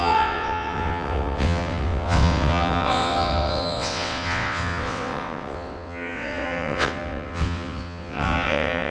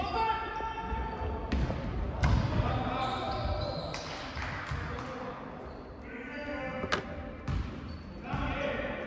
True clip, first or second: second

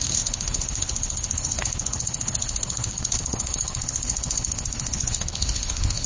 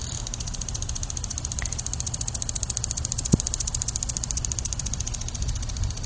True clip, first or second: second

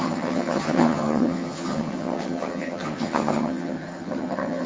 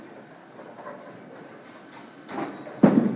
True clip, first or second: second